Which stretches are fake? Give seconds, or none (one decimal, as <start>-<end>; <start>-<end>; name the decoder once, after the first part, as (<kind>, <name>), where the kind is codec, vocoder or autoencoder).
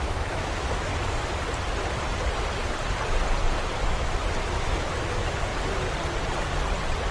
0.0-0.9 (autoencoder, DAC-VAE); 4.5-5.5